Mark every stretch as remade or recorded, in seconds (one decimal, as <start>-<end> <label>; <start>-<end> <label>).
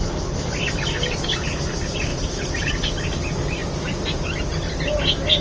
0.0-2.1 recorded; 2.1-2.7 remade; 2.7-5.4 recorded